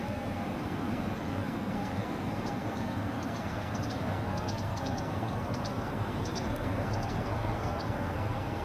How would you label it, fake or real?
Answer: fake